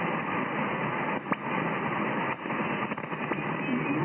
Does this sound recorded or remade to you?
recorded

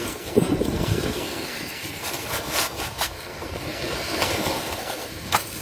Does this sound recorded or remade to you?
remade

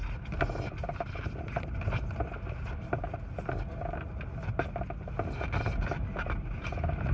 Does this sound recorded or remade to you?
recorded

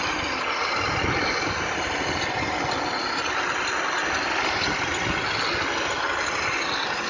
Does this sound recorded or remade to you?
recorded